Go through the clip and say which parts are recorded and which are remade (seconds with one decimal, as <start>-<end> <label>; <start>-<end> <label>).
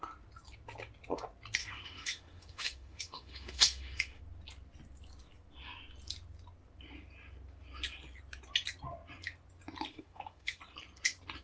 0.0-1.6 recorded; 1.6-4.2 remade; 4.2-9.9 recorded; 9.9-10.6 remade; 10.6-11.4 recorded